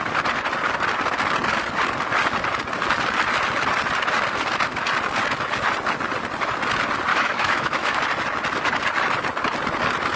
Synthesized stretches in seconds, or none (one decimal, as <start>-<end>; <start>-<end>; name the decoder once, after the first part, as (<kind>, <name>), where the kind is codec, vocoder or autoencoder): 7.1-8.0 (autoencoder, DAC-VAE)